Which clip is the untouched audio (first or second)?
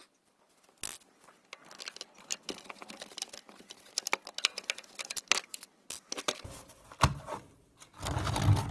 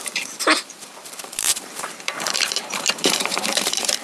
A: first